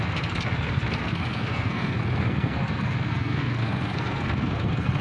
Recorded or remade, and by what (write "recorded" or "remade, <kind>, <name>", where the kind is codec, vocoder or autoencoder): remade, codec, SNAC